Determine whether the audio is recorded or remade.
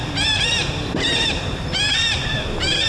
remade